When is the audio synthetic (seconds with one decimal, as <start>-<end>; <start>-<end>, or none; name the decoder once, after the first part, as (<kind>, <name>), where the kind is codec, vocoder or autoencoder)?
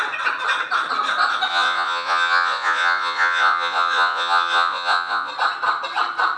1.5-5.3 (vocoder, Vocos)